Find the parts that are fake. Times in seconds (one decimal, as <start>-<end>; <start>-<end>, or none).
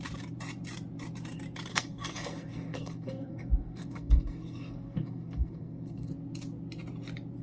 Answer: 1.7-6.1